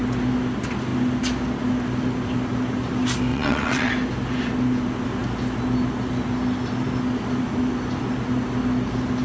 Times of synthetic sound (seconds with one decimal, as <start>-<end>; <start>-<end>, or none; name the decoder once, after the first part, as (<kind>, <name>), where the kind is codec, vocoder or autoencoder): 3.3-3.9 (vocoder, WaveNeXt)